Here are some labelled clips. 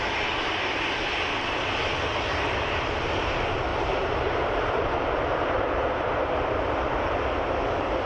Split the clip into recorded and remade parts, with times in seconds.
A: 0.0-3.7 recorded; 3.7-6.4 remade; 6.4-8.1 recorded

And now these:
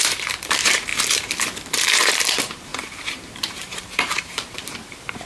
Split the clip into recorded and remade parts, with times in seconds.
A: 0.0-0.9 remade; 0.9-1.6 recorded; 1.6-5.3 remade

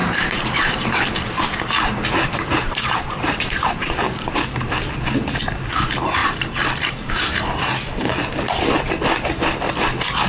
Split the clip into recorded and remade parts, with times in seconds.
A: 0.0-4.9 remade; 4.9-6.2 recorded; 6.2-8.9 remade; 8.9-10.3 recorded

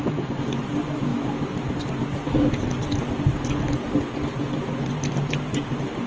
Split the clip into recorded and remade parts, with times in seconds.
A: 0.0-1.1 remade; 1.1-4.8 recorded; 4.8-6.1 remade